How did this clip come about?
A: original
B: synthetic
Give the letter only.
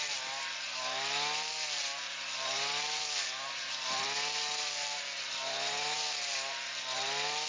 A